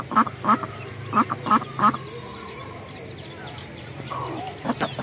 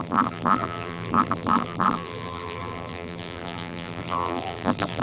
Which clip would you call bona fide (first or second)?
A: first